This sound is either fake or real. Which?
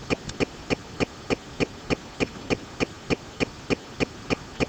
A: real